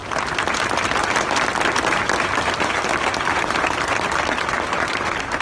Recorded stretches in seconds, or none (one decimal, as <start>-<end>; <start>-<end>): 0.0-5.4